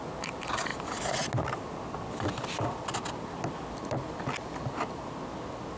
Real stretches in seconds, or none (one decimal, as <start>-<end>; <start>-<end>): 0.0-5.8